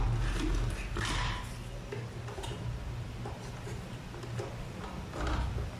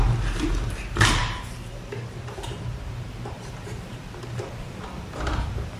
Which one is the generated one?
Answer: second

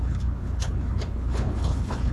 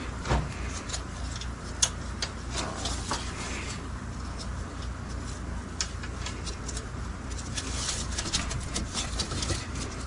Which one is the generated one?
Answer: first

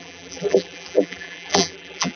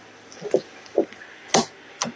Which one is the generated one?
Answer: first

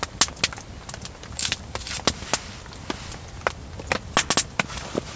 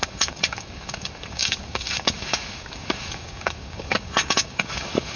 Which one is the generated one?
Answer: second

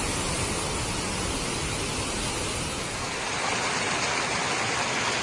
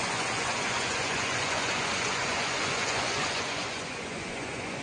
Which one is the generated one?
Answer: second